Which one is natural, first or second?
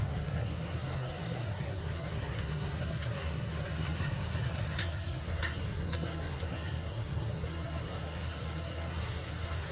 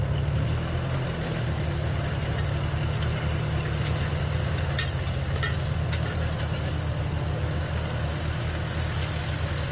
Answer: second